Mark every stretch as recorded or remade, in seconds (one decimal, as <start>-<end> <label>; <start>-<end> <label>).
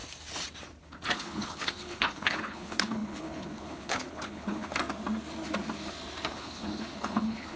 0.0-0.8 recorded; 0.8-4.7 remade; 4.7-6.3 recorded; 6.3-7.6 remade